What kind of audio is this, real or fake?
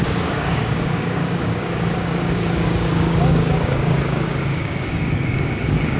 fake